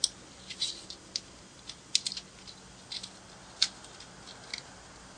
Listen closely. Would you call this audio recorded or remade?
recorded